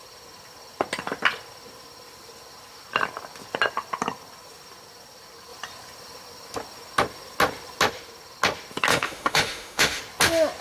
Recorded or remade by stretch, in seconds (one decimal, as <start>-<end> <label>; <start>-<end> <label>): 0.0-8.9 recorded; 8.9-10.0 remade; 10.0-10.6 recorded